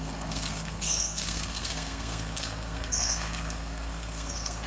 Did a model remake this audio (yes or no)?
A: yes